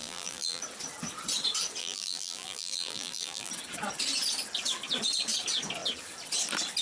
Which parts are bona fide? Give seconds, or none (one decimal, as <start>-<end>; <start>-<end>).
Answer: 0.6-1.8; 3.5-6.8